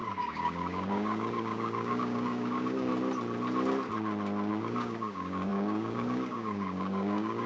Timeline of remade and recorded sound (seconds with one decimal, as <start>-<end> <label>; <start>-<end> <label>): 0.0-2.9 remade; 2.9-4.5 recorded; 4.5-7.5 remade